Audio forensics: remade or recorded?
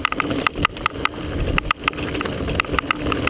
recorded